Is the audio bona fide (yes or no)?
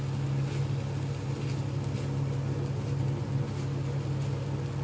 yes